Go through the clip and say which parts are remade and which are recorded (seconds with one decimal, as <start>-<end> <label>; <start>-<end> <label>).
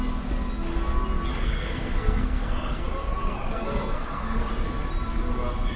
0.0-1.3 recorded; 1.3-4.5 remade; 4.5-5.8 recorded